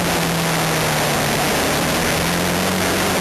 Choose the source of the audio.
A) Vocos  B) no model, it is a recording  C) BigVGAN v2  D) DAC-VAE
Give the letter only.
B